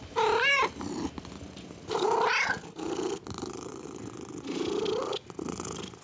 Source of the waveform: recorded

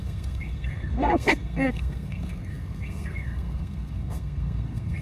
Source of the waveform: remade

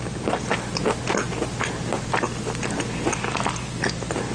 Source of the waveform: recorded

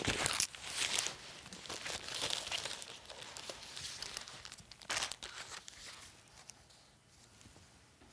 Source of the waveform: recorded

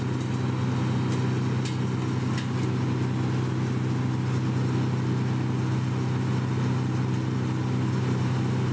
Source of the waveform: recorded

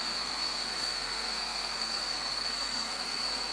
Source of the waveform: remade